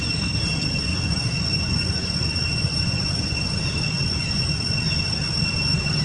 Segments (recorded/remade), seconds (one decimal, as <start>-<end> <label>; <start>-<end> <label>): 0.0-0.9 recorded; 0.9-4.5 remade; 4.5-6.0 recorded